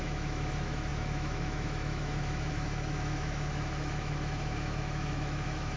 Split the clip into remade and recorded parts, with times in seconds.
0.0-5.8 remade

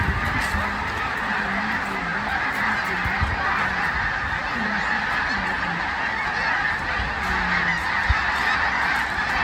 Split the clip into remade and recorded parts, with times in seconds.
0.0-9.4 recorded

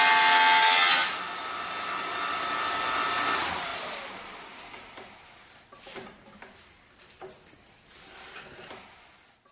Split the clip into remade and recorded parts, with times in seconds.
0.0-9.5 recorded